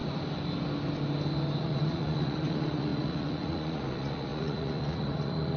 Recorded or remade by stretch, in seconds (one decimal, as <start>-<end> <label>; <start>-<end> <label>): 0.0-1.6 recorded; 1.6-5.6 remade